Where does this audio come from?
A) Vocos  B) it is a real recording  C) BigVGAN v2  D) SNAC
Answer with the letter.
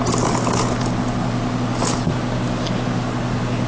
B